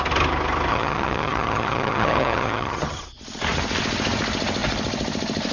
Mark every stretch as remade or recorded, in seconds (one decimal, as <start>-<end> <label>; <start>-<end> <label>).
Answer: 0.0-0.7 recorded; 0.7-3.0 remade; 3.0-5.5 recorded